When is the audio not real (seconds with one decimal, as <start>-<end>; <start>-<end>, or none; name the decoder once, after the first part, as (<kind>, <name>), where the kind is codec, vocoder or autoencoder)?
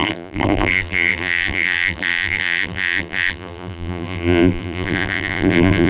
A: 0.0-5.9 (vocoder, BigVGAN v2)